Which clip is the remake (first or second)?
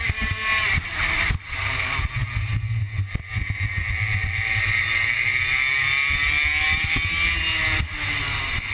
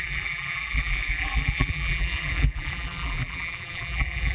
second